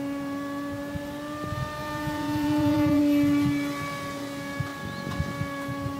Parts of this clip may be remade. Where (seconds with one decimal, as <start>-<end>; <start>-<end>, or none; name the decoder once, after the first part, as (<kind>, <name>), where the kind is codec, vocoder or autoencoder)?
1.8-3.0 (vocoder, Vocos)